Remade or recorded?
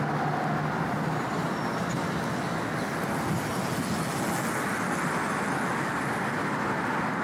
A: recorded